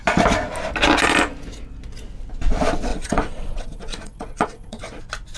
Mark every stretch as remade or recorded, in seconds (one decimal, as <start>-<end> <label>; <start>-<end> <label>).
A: 0.0-2.9 recorded; 2.9-5.0 remade; 5.0-5.4 recorded